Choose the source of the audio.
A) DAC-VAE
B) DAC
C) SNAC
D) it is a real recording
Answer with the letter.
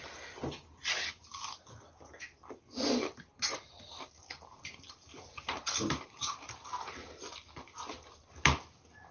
D